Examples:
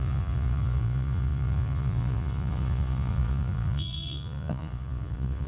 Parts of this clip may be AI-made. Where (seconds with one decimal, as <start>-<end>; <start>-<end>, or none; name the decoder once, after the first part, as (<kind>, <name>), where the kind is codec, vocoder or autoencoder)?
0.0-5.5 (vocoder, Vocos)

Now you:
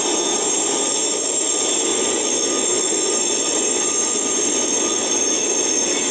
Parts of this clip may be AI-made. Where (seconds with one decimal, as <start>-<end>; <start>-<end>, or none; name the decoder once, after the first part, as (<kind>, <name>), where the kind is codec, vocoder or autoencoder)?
1.9-5.2 (vocoder, Vocos)

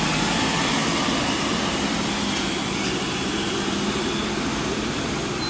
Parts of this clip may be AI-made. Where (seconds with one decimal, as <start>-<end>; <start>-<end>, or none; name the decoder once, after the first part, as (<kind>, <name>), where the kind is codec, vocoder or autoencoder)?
none

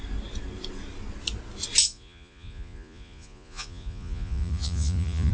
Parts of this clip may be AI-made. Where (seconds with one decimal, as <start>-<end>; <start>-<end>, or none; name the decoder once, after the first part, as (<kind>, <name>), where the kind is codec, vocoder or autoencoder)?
1.8-5.3 (vocoder, Vocos)